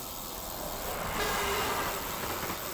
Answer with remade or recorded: recorded